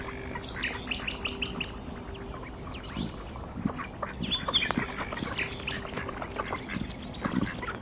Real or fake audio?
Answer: real